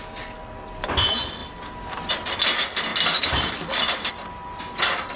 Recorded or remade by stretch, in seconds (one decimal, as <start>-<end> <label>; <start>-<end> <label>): 0.0-1.4 recorded; 1.4-2.1 remade; 2.1-2.9 recorded; 2.9-4.1 remade; 4.1-5.2 recorded